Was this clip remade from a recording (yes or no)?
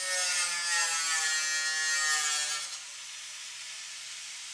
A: no